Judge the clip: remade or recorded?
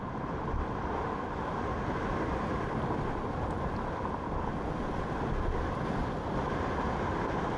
recorded